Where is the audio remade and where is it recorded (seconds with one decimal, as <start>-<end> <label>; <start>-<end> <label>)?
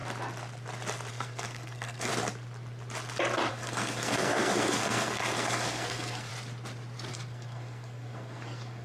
0.0-1.1 recorded; 1.1-2.1 remade; 2.1-3.5 recorded; 3.5-6.3 remade; 6.3-7.1 recorded; 7.1-8.8 remade